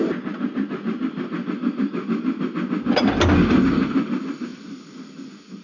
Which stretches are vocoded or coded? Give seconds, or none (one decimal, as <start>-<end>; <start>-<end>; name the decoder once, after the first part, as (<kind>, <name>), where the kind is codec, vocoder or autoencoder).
none